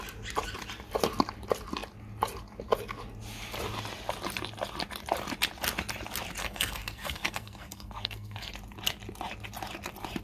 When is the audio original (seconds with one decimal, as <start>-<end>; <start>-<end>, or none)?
0.0-6.4; 8.5-10.2